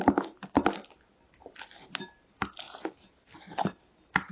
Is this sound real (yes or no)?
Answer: yes